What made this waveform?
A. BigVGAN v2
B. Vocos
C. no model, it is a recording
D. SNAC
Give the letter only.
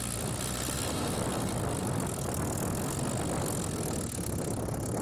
C